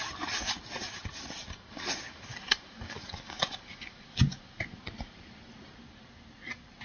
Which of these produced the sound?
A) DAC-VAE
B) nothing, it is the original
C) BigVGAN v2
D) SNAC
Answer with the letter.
B